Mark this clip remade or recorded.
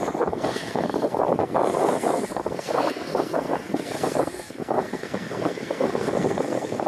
remade